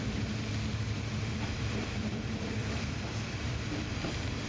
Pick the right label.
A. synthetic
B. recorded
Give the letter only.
A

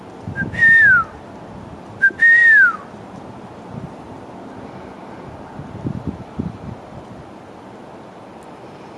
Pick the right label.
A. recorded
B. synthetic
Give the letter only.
A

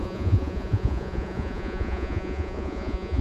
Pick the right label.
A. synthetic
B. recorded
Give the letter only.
A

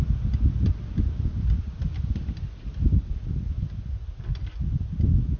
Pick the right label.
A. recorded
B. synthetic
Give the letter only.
A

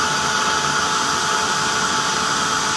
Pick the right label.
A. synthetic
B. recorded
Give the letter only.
B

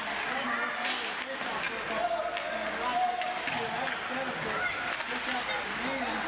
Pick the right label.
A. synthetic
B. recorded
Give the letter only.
B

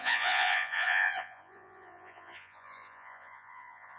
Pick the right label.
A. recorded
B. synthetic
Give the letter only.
B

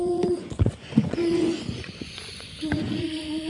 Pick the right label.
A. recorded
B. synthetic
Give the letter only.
B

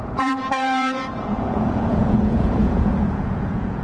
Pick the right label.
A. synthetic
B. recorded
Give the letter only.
A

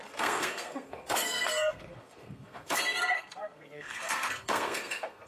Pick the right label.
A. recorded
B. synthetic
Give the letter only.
B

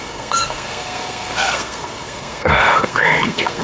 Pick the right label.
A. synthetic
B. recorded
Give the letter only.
A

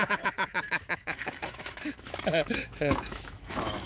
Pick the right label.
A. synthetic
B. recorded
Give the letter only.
A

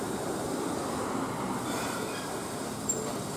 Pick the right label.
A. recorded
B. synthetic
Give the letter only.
A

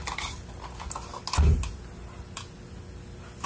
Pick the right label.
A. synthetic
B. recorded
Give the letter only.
B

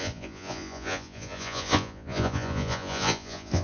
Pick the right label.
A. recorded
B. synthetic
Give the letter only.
B